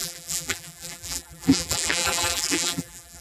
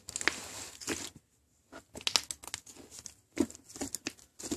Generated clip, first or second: first